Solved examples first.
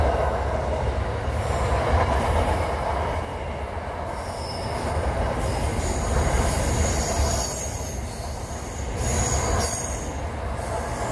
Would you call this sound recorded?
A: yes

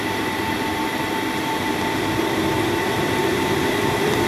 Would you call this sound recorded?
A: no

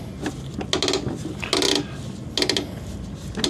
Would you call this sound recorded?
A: yes